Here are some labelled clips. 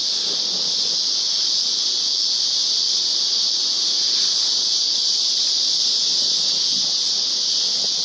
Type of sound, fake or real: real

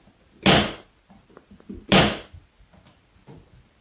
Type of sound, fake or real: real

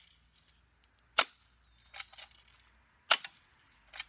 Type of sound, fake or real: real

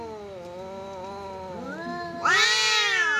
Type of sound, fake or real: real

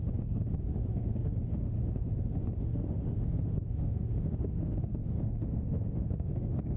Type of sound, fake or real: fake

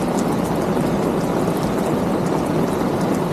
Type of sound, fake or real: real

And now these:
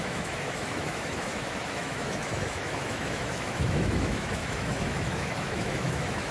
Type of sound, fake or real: fake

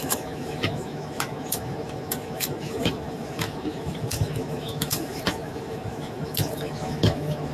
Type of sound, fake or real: fake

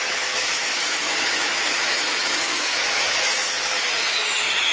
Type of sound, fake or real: fake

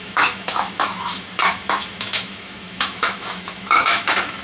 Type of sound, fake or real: fake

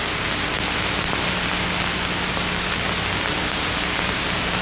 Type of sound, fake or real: real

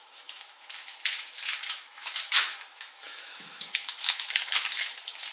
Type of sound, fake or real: fake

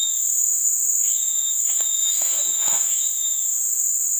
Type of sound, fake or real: fake